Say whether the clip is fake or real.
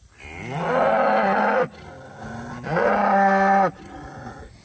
real